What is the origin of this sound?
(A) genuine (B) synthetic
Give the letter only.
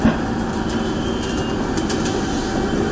A